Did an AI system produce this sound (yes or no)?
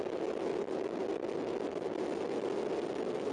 no